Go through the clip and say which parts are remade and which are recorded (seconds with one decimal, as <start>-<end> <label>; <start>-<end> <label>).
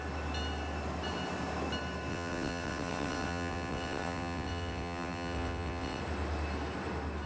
0.0-2.1 recorded; 2.1-6.0 remade; 6.0-7.3 recorded